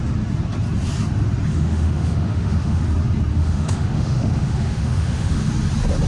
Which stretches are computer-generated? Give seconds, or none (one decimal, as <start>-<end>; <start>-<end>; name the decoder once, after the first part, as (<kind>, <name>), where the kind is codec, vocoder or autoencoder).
1.5-2.8 (autoencoder, DAC-VAE); 3.3-5.5

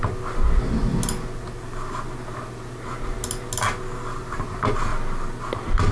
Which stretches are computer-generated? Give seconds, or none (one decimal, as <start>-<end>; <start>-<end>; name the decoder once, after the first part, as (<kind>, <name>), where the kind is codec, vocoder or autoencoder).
none

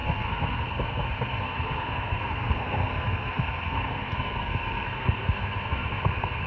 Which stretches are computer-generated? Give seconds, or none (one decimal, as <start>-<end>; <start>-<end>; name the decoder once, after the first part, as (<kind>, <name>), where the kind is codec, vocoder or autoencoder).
0.0-6.5 (codec, SNAC)

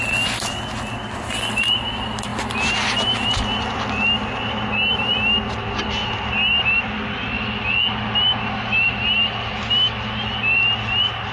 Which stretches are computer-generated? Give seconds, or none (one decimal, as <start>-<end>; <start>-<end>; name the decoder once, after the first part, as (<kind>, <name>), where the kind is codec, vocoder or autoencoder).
none

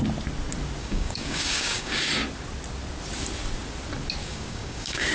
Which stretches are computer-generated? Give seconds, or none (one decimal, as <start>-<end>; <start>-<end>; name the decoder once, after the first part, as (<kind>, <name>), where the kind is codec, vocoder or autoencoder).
0.8-2.1 (codec, DAC); 4.2-5.1

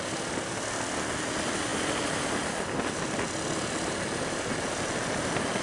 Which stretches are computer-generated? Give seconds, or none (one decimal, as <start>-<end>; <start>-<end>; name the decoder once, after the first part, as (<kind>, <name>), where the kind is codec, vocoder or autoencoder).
none